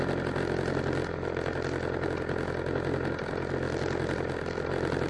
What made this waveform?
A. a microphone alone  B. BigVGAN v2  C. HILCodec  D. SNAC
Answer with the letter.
A